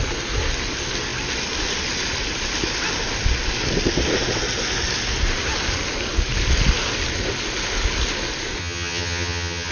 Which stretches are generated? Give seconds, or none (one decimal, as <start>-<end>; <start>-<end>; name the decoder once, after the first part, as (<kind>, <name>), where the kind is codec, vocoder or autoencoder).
8.6-9.7 (vocoder, HiFi-GAN)